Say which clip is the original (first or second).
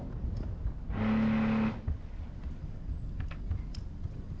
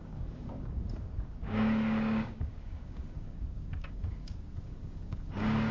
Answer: first